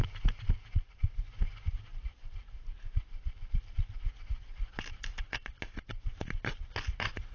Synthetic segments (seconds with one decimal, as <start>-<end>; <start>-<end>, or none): 1.9-3.6

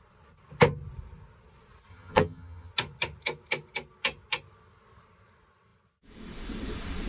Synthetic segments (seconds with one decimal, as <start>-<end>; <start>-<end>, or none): 1.9-2.7

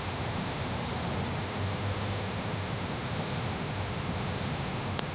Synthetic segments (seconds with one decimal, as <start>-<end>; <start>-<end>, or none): 0.0-0.8; 1.4-5.1

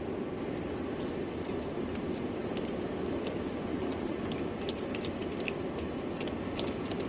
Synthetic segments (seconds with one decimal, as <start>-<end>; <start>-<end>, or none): 3.7-4.3